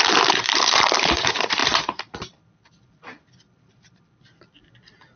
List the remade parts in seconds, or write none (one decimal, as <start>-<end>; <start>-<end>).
0.0-5.2